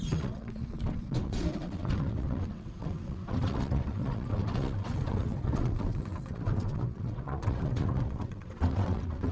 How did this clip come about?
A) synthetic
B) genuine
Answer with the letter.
A